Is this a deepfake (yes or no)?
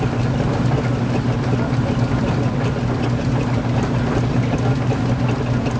no